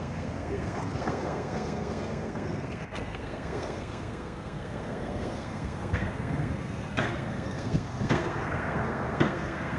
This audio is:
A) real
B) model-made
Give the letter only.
B